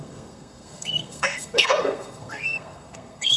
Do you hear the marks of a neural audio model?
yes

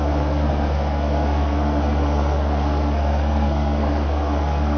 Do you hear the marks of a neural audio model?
yes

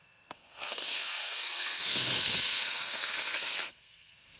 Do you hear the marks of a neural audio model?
yes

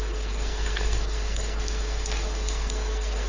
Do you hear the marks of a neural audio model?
yes